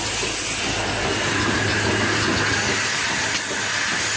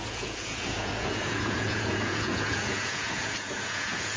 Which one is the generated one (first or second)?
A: second